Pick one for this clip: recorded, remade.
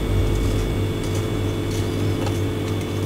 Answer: recorded